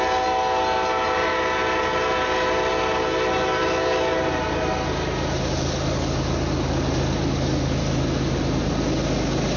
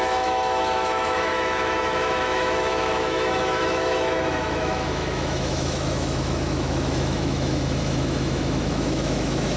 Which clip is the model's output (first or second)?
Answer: second